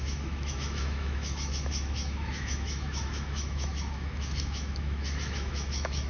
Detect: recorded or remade remade